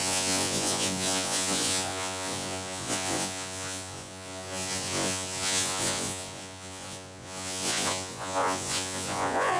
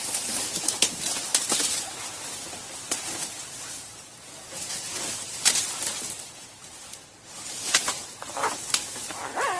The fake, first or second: first